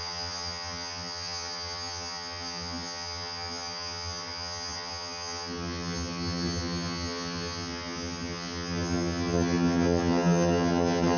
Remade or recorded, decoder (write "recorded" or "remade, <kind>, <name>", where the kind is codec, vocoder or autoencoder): remade, vocoder, HiFi-GAN